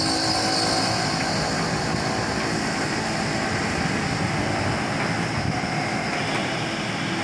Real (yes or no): yes